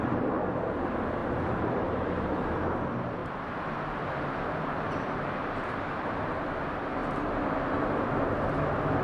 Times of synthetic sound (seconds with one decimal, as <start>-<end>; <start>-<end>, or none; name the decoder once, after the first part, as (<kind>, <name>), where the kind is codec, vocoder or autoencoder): 1.2-2.4 (vocoder, BigVGAN v2); 3.2-6.6